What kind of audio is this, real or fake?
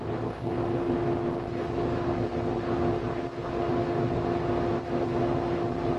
real